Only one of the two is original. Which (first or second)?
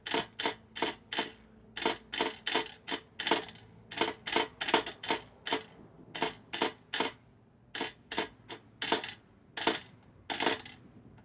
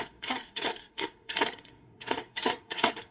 first